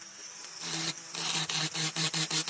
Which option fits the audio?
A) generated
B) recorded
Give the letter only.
B